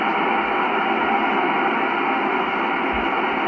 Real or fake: real